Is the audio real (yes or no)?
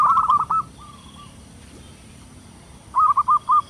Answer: yes